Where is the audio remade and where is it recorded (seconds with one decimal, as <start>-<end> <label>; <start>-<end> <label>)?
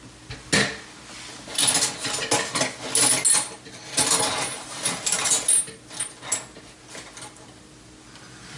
0.0-8.6 recorded